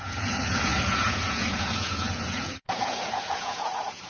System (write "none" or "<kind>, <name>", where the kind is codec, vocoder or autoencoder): vocoder, Vocos